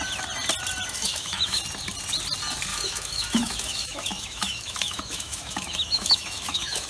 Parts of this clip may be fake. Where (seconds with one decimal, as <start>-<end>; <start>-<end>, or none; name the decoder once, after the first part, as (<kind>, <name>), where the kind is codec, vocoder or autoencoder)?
1.0-1.6 (autoencoder, DAC-VAE); 2.7-6.9